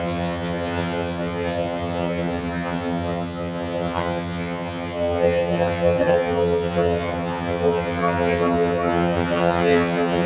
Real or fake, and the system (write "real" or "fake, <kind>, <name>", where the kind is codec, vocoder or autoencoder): fake, vocoder, HiFi-GAN